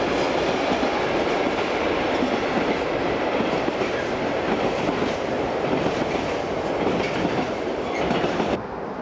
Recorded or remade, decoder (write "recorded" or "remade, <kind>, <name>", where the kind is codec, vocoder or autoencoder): recorded